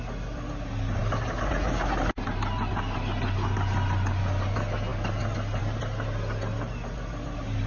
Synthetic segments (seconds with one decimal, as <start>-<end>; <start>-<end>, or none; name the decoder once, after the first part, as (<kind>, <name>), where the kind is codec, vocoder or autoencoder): none